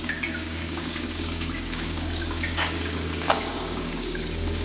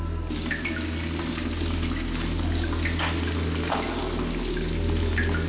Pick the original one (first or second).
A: second